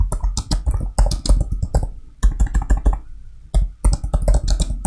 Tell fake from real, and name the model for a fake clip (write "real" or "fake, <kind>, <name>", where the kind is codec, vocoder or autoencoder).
real